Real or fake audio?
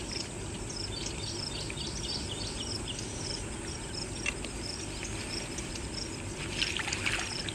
real